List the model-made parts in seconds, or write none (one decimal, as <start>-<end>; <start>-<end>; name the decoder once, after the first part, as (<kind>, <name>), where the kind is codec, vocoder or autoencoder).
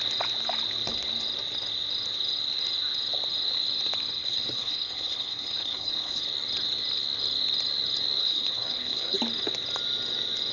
4.2-6.2 (codec, HILCodec); 8.2-9.2